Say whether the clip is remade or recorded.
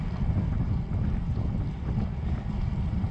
remade